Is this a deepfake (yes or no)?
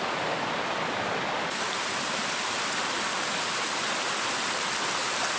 no